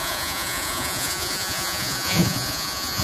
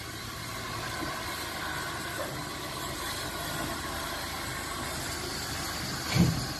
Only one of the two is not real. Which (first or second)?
first